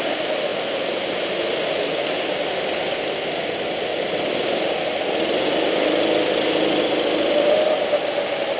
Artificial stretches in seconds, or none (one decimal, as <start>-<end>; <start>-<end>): none